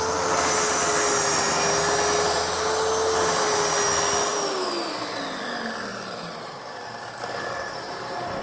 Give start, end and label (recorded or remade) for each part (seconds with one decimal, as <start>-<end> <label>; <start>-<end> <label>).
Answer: 0.0-5.9 recorded; 5.9-6.6 remade; 6.6-8.4 recorded